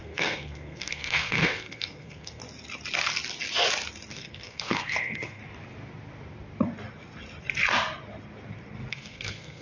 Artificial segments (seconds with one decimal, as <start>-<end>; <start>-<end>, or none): 0.0-2.4; 4.1-5.4; 8.9-9.6